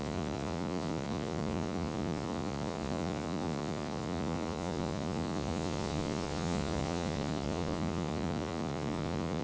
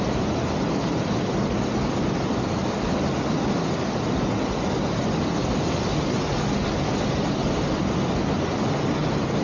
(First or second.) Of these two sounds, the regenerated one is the first